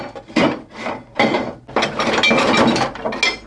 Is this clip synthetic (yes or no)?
no